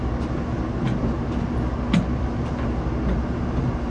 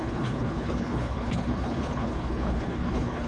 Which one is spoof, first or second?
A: second